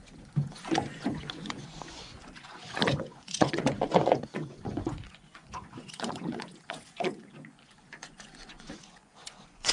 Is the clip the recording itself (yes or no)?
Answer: no